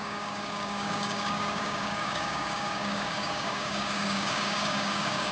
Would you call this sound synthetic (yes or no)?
yes